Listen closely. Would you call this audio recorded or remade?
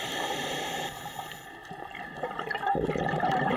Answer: remade